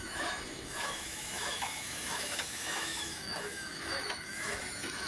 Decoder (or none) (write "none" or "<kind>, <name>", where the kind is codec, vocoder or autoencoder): autoencoder, DAC-VAE